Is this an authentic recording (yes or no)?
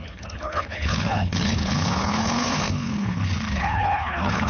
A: no